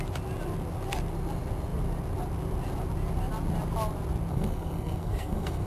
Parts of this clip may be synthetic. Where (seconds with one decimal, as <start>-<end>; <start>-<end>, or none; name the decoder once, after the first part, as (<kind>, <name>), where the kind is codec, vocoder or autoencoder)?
4.3-5.7 (codec, SNAC)

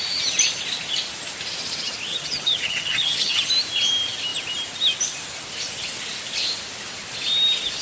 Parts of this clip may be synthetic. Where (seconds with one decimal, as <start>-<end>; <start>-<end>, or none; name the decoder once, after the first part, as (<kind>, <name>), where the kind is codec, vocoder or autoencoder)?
2.1-3.5 (vocoder, HiFi-GAN)

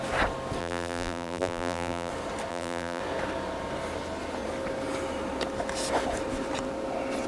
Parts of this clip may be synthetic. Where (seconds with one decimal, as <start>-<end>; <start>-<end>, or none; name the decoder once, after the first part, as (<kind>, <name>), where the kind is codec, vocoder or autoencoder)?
0.6-2.1 (vocoder, BigVGAN v2); 2.5-3.0

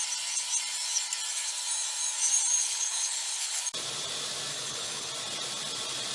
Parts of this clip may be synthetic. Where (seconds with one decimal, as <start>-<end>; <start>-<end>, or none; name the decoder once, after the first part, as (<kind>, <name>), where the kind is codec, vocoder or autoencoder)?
2.6-3.6 (codec, HILCodec); 4.5-5.1

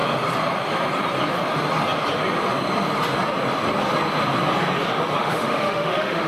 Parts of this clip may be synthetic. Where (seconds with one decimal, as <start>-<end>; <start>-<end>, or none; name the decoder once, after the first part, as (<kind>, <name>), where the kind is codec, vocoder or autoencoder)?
5.2-6.3 (autoencoder, DAC-VAE)

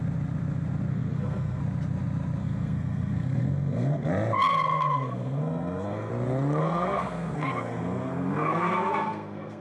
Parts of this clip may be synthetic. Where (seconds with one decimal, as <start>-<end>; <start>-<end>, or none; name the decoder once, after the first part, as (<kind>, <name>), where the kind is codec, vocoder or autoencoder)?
0.9-1.6 (codec, SNAC); 2.4-4.1; 4.5-6.1; 6.6-9.6

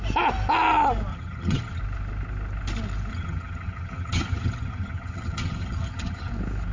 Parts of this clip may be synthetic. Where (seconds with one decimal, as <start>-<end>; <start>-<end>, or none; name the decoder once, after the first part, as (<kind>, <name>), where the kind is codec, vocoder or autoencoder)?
1.1-1.8 (vocoder, HiFi-GAN); 3.1-6.3

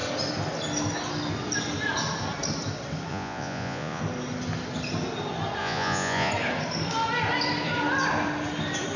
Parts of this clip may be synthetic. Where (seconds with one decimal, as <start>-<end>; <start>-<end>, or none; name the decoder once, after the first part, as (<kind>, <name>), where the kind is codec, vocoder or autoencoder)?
3.1-4.0 (vocoder, Vocos); 5.6-6.3